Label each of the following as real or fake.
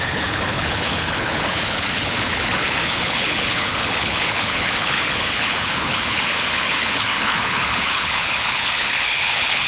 fake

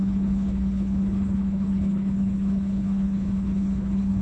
fake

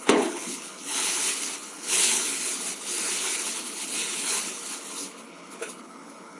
fake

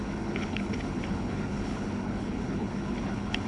fake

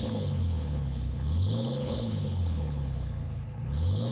fake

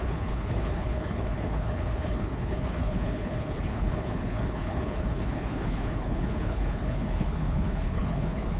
fake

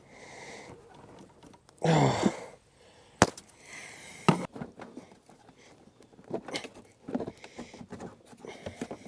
real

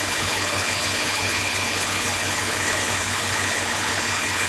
fake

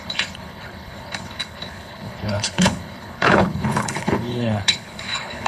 fake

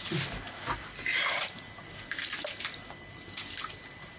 real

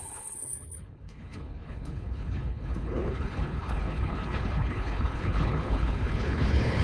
fake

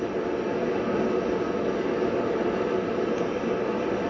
real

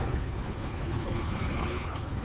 fake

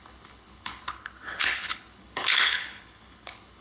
fake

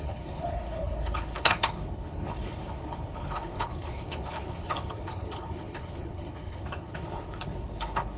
fake